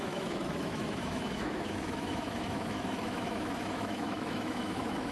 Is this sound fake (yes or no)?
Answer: yes